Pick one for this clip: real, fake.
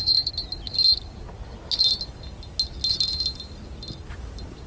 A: real